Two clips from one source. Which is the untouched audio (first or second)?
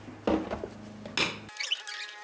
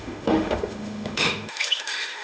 first